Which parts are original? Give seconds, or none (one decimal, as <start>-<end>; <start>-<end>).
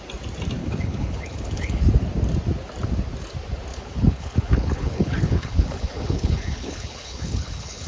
0.0-0.6; 1.8-3.7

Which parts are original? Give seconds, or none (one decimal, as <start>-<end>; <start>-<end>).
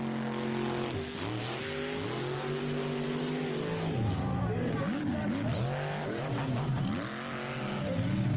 0.0-4.4; 5.1-8.4